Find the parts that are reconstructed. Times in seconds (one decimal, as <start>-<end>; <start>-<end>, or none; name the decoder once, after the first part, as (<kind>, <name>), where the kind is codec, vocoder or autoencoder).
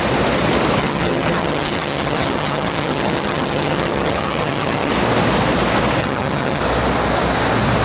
0.8-4.9 (vocoder, HiFi-GAN); 6.0-6.6